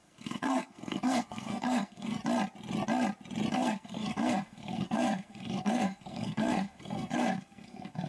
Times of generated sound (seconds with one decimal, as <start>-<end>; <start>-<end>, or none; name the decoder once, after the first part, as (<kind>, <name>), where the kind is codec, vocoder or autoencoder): 0.0-2.2 (codec, SNAC); 3.5-8.1